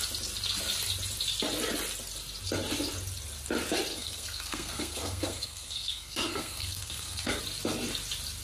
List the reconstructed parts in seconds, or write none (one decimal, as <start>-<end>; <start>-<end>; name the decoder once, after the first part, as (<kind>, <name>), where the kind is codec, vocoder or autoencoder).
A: 3.9-7.4 (codec, SNAC)